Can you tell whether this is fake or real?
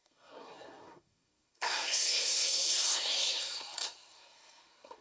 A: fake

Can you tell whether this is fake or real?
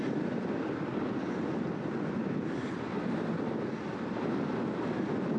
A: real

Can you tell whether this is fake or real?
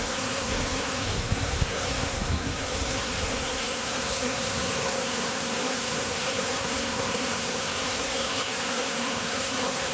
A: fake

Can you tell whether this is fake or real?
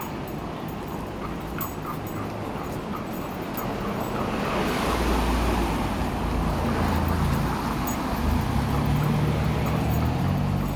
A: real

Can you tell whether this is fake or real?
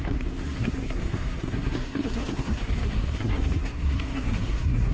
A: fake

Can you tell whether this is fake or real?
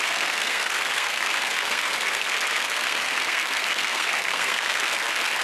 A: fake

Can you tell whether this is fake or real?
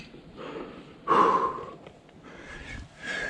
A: real